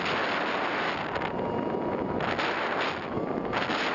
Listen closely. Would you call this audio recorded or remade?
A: recorded